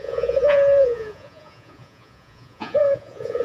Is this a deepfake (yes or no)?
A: yes